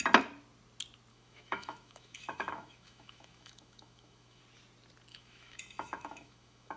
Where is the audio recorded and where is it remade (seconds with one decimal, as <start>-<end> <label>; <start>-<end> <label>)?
0.0-1.1 recorded; 1.1-4.4 remade; 4.4-5.1 recorded; 5.1-6.8 remade